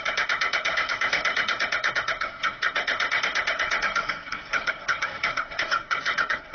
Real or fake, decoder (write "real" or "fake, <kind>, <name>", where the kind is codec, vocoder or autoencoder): fake, codec, SNAC